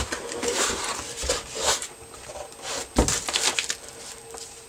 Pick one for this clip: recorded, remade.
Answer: recorded